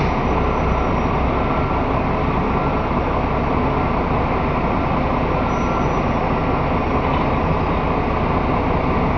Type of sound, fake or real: real